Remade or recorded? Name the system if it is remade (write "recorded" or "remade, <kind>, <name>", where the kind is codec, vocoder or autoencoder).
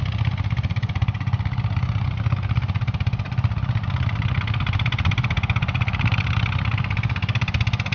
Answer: recorded